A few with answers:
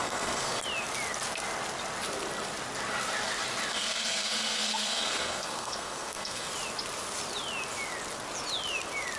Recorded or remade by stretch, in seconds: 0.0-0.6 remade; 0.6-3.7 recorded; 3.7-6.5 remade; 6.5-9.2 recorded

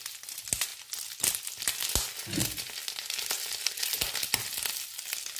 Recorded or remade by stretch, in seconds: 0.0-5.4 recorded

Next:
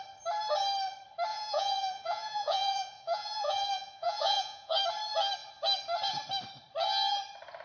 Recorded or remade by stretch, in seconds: 0.0-1.3 recorded; 1.3-4.8 remade; 4.8-7.6 recorded

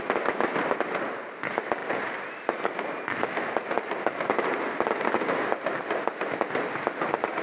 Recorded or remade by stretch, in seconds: 0.0-7.4 recorded

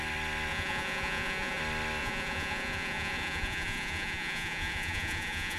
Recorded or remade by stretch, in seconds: 0.0-0.5 recorded; 0.5-1.6 remade; 1.6-2.0 recorded; 2.0-5.6 remade